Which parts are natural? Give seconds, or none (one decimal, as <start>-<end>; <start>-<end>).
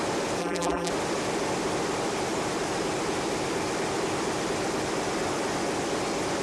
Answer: 0.0-0.4; 0.9-6.4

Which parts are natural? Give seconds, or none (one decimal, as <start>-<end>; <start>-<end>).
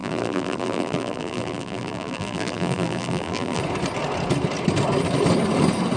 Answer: 3.6-6.0